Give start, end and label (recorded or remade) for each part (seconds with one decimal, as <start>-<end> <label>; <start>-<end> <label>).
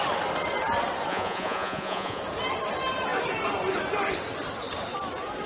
0.0-1.1 recorded; 1.1-2.2 remade; 2.2-5.5 recorded